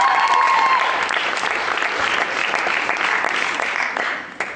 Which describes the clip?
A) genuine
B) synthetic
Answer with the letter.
A